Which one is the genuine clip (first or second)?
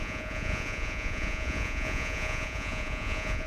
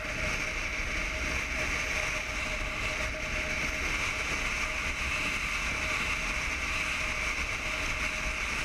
second